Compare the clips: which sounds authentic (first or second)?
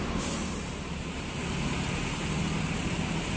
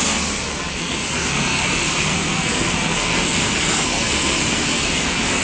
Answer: first